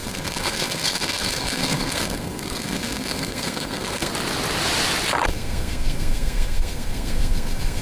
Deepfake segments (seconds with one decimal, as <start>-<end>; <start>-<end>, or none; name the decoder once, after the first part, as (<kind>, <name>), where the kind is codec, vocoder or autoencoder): 0.0-4.1 (codec, SNAC); 5.3-7.8